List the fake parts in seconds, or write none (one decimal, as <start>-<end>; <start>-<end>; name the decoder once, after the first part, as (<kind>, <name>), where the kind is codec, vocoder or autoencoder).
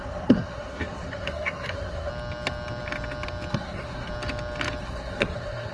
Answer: 0.0-2.1 (codec, SNAC); 3.5-4.1; 4.8-5.7